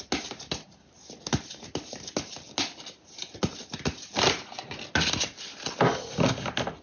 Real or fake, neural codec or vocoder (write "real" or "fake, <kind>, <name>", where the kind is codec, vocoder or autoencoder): real